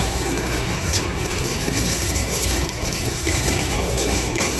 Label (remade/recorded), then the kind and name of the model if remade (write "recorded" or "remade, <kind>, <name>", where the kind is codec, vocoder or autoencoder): remade, codec, SNAC